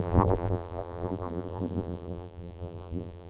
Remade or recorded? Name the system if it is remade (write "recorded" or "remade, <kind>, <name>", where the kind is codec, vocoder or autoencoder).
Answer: remade, vocoder, BigVGAN v2